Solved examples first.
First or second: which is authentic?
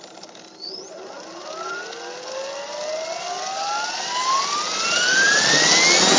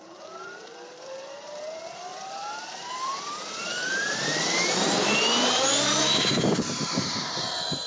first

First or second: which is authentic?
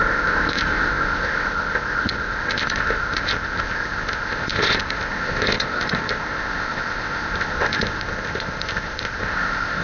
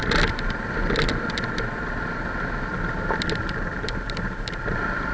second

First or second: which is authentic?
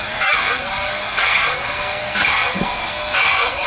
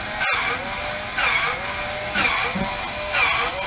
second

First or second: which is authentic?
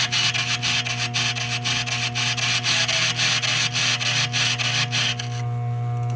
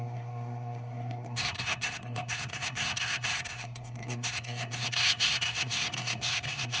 first